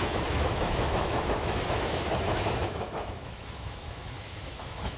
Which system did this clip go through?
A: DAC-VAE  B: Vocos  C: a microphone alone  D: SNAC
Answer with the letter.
A